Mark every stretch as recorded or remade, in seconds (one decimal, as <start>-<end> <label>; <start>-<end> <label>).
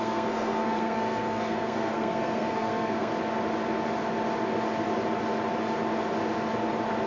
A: 0.0-3.1 remade; 3.1-7.1 recorded